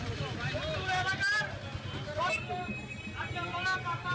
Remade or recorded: recorded